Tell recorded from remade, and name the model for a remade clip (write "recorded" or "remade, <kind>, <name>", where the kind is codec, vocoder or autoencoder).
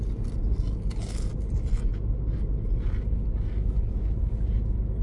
recorded